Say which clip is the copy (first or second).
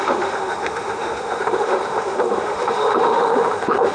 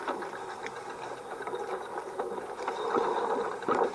first